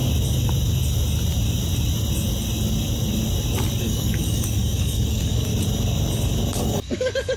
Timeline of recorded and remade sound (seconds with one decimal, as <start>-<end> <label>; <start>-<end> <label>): 0.0-3.8 recorded; 3.8-5.5 remade; 5.5-6.6 recorded; 6.6-7.4 remade